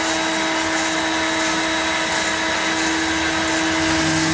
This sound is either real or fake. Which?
real